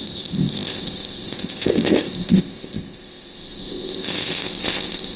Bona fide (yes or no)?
no